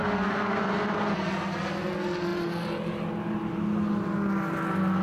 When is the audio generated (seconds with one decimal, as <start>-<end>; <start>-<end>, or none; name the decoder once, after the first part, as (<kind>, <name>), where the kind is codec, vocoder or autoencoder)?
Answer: 0.0-0.6 (codec, SNAC)